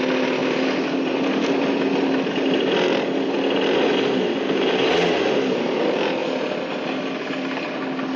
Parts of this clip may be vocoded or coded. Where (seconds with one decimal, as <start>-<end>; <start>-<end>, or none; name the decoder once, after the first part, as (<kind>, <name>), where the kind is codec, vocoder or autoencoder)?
none